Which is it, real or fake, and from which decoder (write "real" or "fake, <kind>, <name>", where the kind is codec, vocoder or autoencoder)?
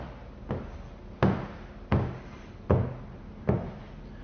real